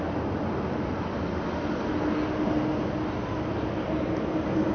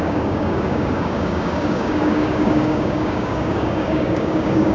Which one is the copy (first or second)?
second